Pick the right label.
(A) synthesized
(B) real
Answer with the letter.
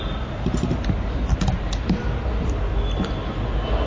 B